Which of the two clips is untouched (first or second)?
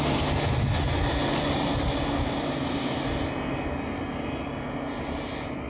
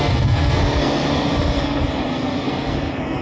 first